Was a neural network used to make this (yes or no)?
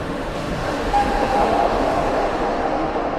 yes